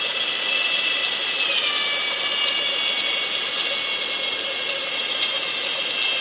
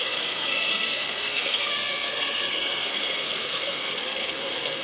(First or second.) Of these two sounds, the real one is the first